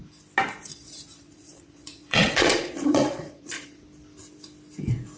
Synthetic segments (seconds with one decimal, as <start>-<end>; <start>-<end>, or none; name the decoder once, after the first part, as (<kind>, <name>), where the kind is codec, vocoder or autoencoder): 0.7-3.8 (vocoder, Vocos)